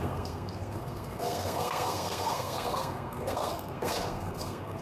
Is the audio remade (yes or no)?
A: yes